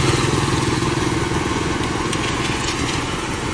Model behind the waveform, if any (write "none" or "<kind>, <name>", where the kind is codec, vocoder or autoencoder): vocoder, Vocos